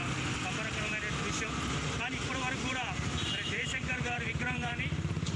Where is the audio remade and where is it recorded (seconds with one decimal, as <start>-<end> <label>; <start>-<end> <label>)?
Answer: 0.0-2.0 recorded; 2.0-5.4 remade